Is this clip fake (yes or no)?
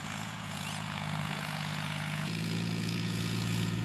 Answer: yes